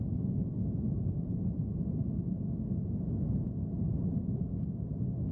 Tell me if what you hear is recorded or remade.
recorded